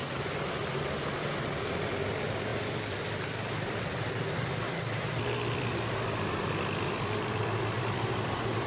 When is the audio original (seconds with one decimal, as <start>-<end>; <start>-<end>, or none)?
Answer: none

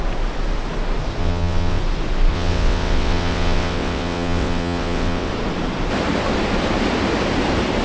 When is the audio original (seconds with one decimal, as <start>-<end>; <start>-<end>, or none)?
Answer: 0.0-1.2; 1.8-2.3; 5.3-7.8